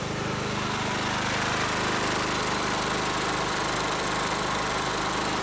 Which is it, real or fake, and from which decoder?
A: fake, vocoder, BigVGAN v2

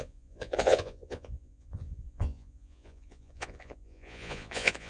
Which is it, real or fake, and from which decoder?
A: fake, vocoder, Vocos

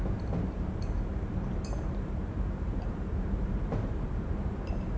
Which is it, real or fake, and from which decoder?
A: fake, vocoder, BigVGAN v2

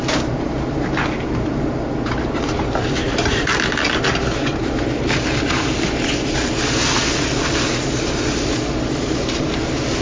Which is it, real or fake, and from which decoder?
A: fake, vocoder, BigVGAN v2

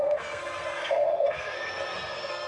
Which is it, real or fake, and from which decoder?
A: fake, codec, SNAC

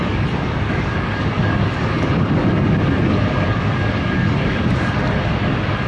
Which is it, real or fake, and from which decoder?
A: fake, codec, DAC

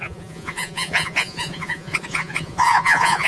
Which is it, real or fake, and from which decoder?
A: fake, vocoder, Vocos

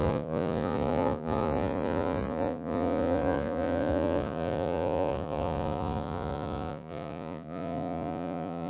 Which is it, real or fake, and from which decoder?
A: fake, vocoder, Vocos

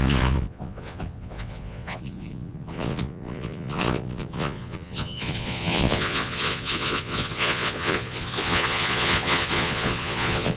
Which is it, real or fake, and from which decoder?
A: fake, vocoder, Vocos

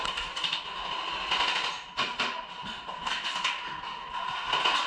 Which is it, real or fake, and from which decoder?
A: real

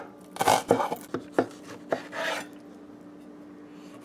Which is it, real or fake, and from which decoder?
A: real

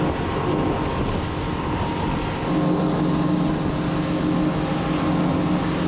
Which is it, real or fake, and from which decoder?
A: real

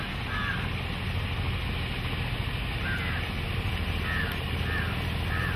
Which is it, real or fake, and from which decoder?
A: real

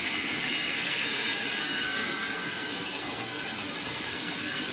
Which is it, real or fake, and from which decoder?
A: fake, codec, SNAC